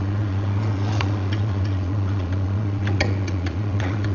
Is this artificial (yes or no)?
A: yes